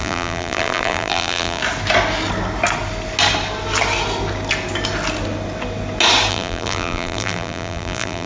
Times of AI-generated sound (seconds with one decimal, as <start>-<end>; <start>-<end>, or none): 0.0-1.6; 6.3-8.3